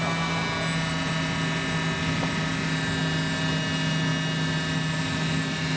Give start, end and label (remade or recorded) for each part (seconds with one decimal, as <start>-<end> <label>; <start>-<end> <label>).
0.0-5.8 recorded